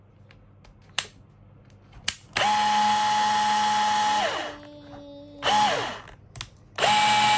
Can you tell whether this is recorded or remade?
recorded